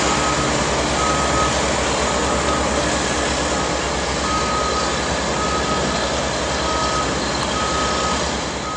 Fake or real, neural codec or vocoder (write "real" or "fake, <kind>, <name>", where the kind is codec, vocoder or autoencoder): real